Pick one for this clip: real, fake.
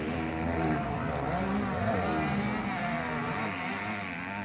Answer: real